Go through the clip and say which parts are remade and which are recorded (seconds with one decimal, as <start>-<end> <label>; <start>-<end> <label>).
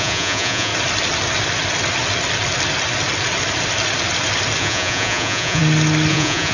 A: 0.0-0.7 remade; 0.7-4.6 recorded; 4.6-5.6 remade; 5.6-6.1 recorded; 6.1-6.5 remade